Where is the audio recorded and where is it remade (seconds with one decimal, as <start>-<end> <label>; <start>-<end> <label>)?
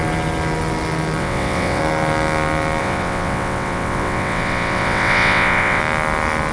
0.0-1.2 recorded; 1.2-1.8 remade; 1.8-2.8 recorded; 2.8-5.8 remade; 5.8-6.5 recorded